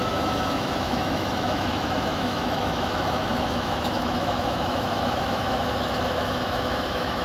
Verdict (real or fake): fake